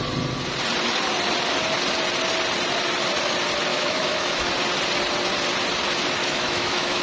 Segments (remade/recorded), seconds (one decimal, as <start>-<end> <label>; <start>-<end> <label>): 0.0-3.7 recorded; 3.7-4.5 remade; 4.5-6.2 recorded; 6.2-7.0 remade